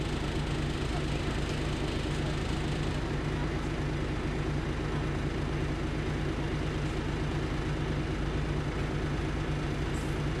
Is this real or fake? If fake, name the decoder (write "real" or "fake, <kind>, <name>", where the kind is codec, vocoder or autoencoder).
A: real